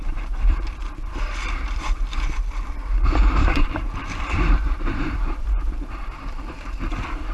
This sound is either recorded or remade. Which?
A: remade